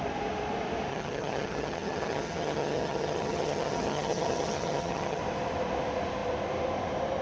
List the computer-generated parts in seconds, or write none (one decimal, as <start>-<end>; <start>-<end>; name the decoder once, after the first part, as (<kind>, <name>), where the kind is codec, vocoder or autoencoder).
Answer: 0.9-5.2 (vocoder, HiFi-GAN)